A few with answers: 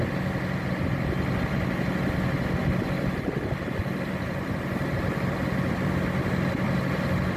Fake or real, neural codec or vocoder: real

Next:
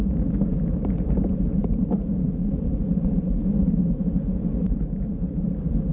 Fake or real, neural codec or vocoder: fake, vocoder, BigVGAN v2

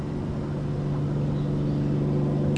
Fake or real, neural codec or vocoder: real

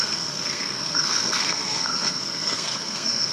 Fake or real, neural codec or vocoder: fake, codec, SNAC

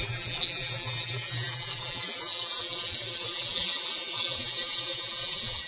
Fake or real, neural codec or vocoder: fake, vocoder, BigVGAN v2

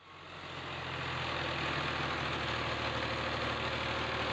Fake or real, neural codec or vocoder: real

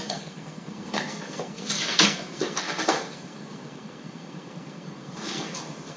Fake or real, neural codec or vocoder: fake, codec, SNAC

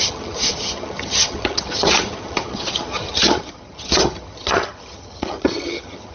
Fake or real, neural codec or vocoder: fake, vocoder, HiFi-GAN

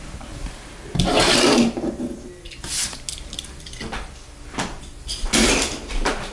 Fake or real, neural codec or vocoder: real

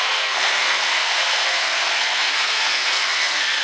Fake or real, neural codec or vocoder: fake, codec, SNAC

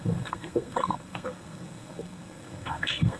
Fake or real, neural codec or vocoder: fake, codec, SNAC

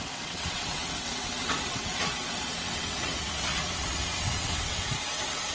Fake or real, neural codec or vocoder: fake, vocoder, WaveNeXt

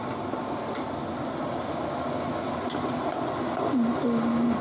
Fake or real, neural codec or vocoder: real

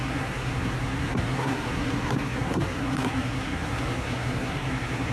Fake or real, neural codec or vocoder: fake, codec, SNAC